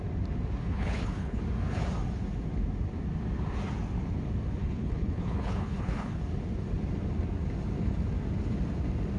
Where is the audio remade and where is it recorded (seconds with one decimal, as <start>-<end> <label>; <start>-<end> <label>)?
0.0-0.6 recorded; 0.6-1.4 remade; 1.4-4.6 recorded; 4.6-6.2 remade; 6.2-9.2 recorded